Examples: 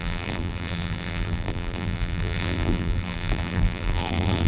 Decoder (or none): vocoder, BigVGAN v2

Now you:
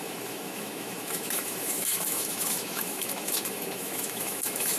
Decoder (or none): autoencoder, DAC-VAE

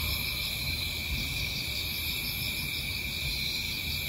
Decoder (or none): none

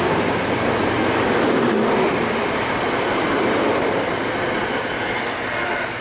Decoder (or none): none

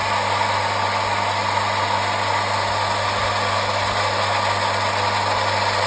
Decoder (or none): none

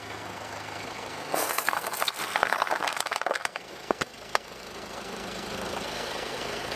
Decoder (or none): codec, SNAC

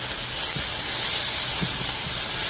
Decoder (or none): none